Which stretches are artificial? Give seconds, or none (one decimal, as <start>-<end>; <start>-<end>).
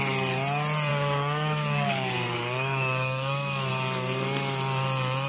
0.9-3.7